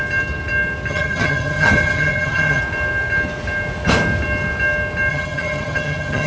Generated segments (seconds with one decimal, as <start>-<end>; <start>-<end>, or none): 0.9-2.6; 5.1-6.3